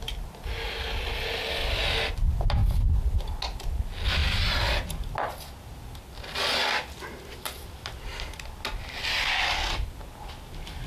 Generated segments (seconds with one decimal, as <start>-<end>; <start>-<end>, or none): none